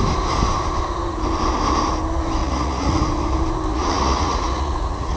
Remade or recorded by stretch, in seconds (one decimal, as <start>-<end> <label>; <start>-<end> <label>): 0.0-2.4 recorded; 2.4-3.0 remade; 3.0-3.7 recorded; 3.7-5.2 remade